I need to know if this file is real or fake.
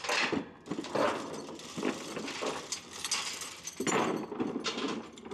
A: real